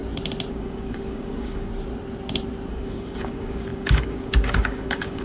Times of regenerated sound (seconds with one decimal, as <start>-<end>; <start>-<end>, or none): 0.5-1.7; 2.7-5.2